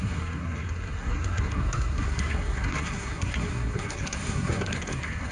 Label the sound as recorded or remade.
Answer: remade